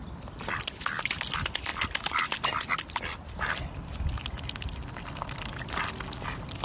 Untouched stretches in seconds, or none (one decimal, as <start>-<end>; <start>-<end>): 0.0-6.6